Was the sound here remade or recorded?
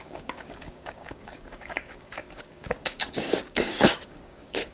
remade